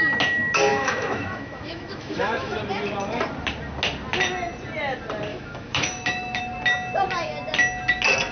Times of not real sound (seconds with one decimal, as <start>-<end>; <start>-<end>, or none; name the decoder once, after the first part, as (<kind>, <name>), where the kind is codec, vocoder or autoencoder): 0.7-2.6 (autoencoder, DAC-VAE); 5.3-6.4